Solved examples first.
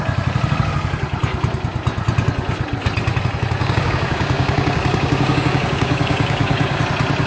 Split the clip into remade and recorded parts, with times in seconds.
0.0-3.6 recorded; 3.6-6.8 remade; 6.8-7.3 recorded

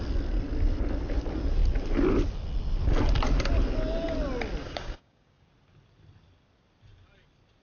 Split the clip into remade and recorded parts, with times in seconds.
0.0-4.6 recorded; 4.6-5.5 remade; 5.5-7.6 recorded

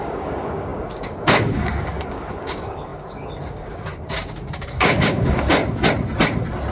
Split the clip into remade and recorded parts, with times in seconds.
0.0-5.6 remade; 5.6-6.7 recorded

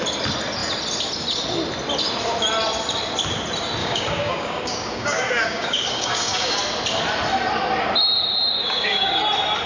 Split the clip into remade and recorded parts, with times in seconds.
0.0-3.8 recorded; 3.8-6.6 remade; 6.6-8.6 recorded; 8.6-9.2 remade; 9.2-9.7 recorded

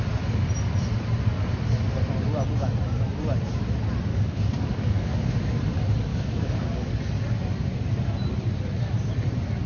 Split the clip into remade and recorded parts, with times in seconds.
0.0-4.1 recorded; 4.1-5.3 remade; 5.3-6.1 recorded; 6.1-6.9 remade; 6.9-9.7 recorded

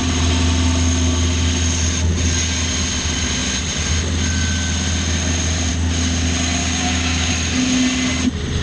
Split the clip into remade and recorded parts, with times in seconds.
0.0-6.6 recorded; 6.6-7.3 remade; 7.3-8.6 recorded